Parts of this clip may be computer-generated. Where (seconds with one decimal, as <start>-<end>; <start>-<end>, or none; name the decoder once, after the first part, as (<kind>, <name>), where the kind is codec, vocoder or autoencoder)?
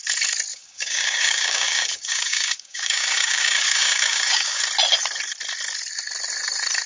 0.5-4.6 (codec, DAC)